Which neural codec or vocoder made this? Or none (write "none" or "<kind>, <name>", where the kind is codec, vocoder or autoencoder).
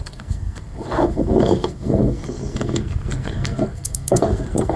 codec, SNAC